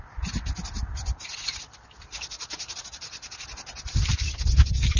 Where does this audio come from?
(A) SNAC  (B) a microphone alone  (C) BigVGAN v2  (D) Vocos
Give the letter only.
B